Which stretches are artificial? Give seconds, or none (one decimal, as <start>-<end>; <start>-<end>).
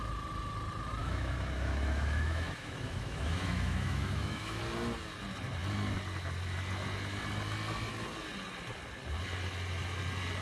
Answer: 1.0-4.6